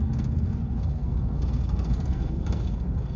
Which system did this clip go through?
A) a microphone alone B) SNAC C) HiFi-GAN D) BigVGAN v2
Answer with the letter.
B